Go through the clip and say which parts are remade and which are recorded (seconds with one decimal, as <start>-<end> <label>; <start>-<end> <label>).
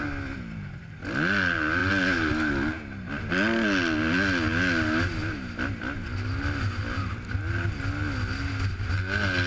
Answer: 0.0-9.5 recorded